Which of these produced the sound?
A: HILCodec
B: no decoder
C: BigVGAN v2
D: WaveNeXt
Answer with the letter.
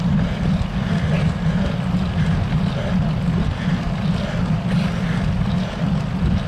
B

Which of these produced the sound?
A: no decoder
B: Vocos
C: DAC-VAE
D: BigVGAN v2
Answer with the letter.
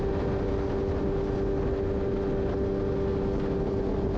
A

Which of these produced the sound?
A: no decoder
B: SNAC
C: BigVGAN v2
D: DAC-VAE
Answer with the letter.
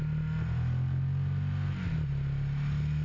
A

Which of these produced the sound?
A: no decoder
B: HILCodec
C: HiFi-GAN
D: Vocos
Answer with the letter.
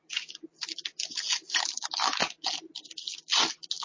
A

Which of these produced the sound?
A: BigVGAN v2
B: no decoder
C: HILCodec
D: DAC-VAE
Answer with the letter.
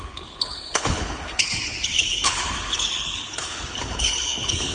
C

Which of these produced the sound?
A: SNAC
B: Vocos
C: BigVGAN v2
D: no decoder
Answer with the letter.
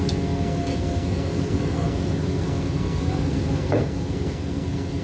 A